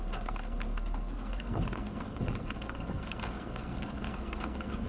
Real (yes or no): no